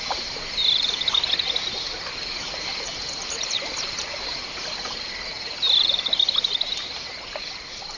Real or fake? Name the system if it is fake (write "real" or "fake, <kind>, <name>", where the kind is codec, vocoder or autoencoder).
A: real